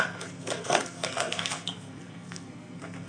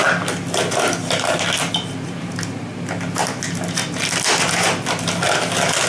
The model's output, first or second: first